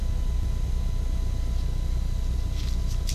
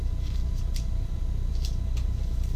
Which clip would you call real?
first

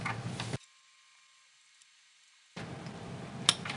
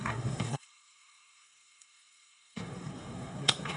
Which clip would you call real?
first